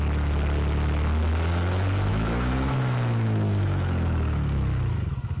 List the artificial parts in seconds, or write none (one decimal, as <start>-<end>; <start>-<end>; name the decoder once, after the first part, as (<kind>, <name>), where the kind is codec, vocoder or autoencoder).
2.1-5.4 (autoencoder, DAC-VAE)